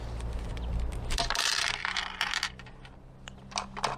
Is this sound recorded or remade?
recorded